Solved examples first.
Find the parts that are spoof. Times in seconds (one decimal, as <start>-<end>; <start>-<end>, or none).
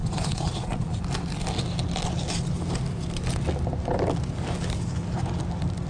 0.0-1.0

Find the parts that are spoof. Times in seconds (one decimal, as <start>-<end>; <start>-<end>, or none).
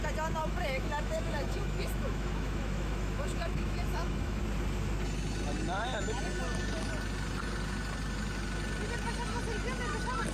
0.4-4.4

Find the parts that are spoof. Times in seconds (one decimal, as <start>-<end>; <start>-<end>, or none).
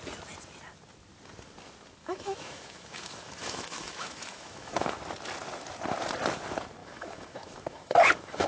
2.0-5.0; 6.8-8.5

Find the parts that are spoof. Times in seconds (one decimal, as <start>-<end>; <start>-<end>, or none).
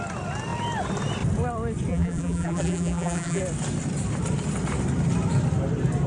1.9-3.4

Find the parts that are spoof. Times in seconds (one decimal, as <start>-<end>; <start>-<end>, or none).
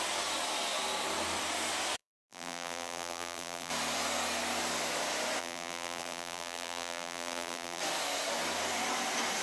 2.0-3.7; 5.4-7.8